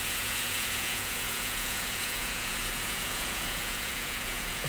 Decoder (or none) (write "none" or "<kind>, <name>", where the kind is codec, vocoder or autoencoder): vocoder, Vocos